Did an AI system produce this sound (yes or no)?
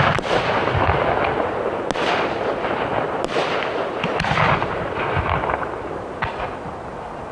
no